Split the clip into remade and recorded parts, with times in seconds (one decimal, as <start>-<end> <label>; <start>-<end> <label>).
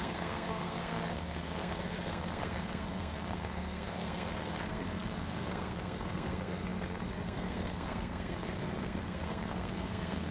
0.0-10.3 remade